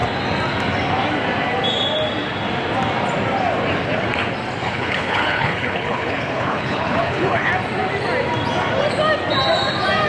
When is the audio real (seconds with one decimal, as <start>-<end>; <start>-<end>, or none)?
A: 0.0-4.6; 7.5-10.1